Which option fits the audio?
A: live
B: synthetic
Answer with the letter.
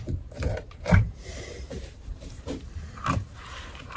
B